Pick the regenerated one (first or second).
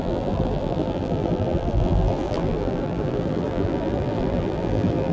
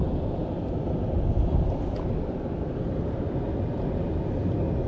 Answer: first